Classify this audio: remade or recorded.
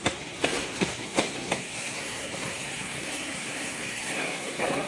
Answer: remade